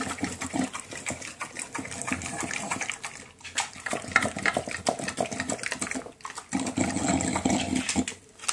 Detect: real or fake real